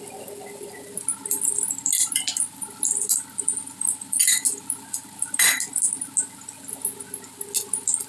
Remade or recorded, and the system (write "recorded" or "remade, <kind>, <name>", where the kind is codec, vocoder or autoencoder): recorded